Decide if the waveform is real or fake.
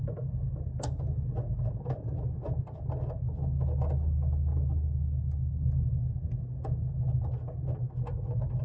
real